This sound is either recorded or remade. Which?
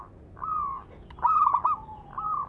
recorded